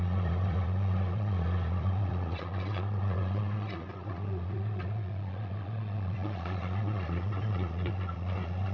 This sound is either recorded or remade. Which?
remade